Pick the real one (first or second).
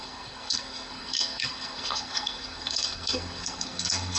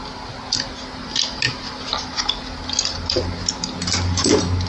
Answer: second